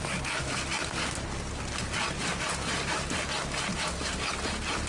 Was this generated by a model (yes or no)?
no